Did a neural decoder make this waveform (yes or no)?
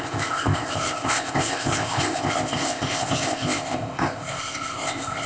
yes